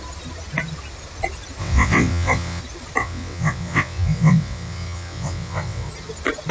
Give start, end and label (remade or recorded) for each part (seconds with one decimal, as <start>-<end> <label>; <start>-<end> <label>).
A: 0.0-1.6 recorded; 1.6-2.6 remade; 2.6-3.0 recorded; 3.0-5.9 remade; 5.9-6.5 recorded